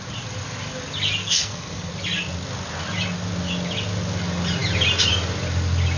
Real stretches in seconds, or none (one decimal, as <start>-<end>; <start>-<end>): 0.0-1.2; 1.9-6.0